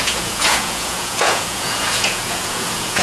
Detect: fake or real fake